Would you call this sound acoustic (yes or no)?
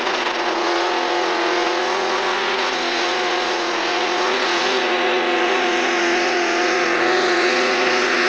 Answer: no